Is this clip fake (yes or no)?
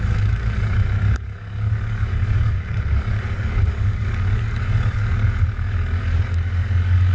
yes